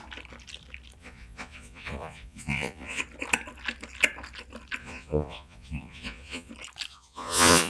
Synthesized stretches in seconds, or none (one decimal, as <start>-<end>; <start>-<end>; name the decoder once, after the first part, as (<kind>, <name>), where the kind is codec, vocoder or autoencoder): 1.0-3.0 (vocoder, Vocos); 4.8-6.5; 6.9-7.7